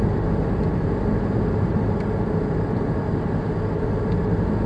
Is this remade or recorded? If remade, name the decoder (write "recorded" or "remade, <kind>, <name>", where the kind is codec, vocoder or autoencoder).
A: recorded